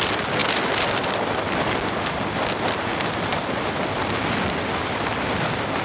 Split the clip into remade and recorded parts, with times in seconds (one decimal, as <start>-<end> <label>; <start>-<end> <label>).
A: 0.0-5.8 recorded

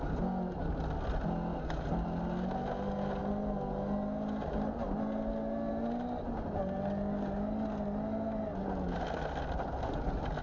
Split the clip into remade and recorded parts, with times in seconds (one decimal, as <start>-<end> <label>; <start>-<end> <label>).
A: 0.0-10.4 recorded

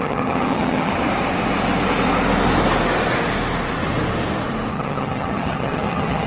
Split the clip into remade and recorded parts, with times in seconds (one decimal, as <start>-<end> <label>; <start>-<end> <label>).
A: 0.0-0.9 remade; 0.9-4.7 recorded; 4.7-6.3 remade

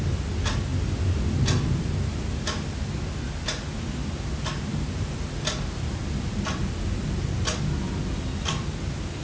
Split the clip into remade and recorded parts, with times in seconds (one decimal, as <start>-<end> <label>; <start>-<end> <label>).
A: 0.0-9.2 recorded

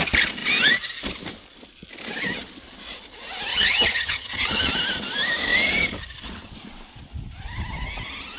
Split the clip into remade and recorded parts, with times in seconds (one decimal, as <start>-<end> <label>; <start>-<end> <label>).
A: 0.0-3.5 recorded; 3.5-4.7 remade; 4.7-8.4 recorded

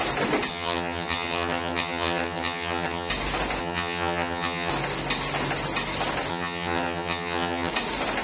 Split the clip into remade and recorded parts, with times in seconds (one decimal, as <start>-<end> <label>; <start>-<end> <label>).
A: 0.0-0.5 recorded; 0.5-3.1 remade; 3.1-3.6 recorded; 3.6-4.7 remade; 4.7-6.3 recorded; 6.3-7.7 remade; 7.7-8.2 recorded

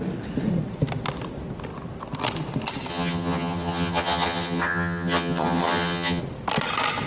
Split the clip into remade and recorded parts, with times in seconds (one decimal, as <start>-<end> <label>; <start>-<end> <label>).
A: 0.0-2.9 recorded; 2.9-6.2 remade; 6.2-7.1 recorded

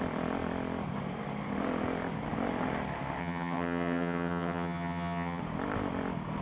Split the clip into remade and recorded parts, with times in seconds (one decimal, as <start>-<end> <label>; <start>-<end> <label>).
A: 0.0-3.2 recorded; 3.2-5.4 remade; 5.4-6.4 recorded